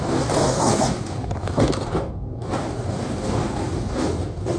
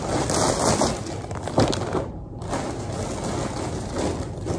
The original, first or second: second